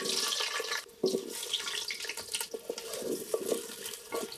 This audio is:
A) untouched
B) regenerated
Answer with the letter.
A